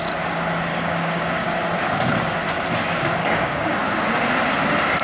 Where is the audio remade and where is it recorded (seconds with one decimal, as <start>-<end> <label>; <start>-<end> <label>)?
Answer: 0.0-0.7 recorded; 0.7-1.4 remade; 1.4-3.2 recorded; 3.2-3.8 remade; 3.8-5.0 recorded